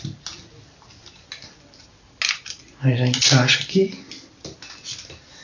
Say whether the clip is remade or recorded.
recorded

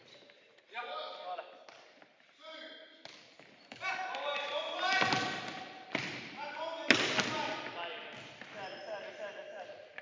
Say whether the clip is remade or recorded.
recorded